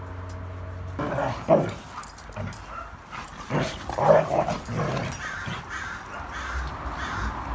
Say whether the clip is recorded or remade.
recorded